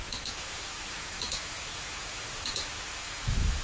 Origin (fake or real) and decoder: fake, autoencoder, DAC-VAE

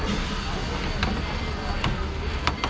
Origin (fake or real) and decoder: real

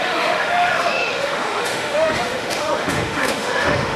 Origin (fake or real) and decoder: fake, autoencoder, DAC-VAE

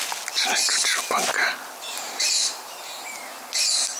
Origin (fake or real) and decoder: real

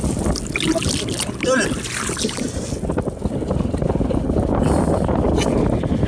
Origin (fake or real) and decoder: real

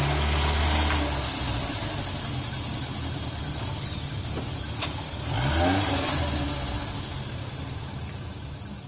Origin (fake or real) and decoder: real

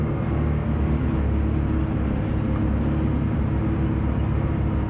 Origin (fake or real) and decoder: real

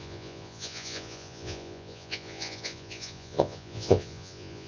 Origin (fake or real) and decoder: fake, vocoder, Vocos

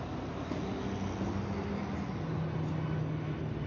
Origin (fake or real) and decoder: real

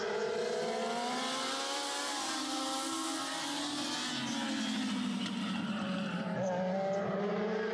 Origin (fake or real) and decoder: real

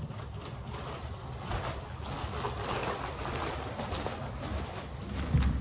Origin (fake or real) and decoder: real